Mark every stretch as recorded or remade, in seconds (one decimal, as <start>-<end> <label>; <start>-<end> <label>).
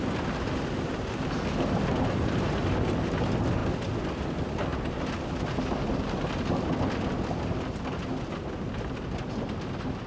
0.0-10.1 recorded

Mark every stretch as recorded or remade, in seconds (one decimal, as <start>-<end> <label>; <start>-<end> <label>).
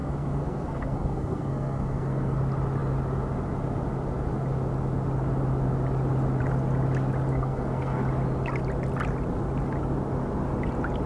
0.0-2.4 remade; 2.4-7.3 recorded; 7.3-8.0 remade; 8.0-11.1 recorded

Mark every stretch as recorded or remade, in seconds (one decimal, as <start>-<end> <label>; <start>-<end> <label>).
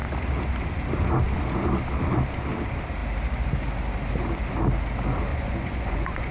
0.0-5.3 recorded; 5.3-6.3 remade